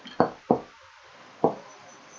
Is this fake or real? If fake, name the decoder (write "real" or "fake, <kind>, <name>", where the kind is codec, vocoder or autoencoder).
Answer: real